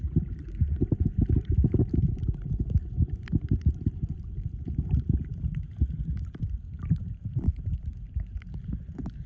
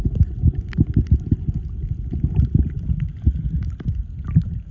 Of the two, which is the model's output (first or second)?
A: first